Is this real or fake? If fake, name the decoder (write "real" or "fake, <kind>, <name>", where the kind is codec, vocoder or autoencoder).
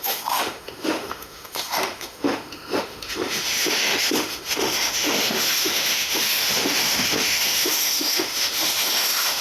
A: fake, autoencoder, DAC-VAE